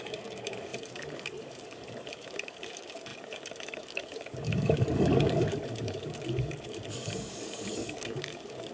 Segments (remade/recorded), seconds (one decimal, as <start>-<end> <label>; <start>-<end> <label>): 0.0-8.7 remade